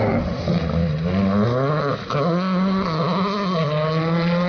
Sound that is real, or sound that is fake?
real